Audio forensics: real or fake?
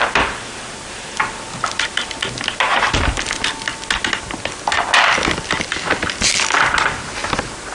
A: real